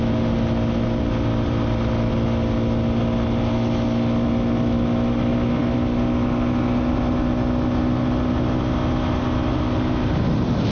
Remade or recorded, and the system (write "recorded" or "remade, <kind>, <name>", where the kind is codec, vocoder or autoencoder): recorded